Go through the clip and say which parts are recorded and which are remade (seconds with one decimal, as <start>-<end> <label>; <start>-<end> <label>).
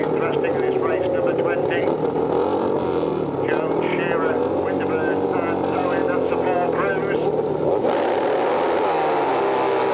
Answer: 0.0-9.9 recorded